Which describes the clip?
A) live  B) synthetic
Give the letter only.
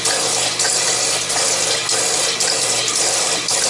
A